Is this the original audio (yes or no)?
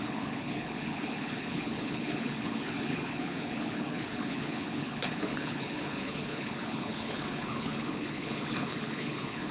no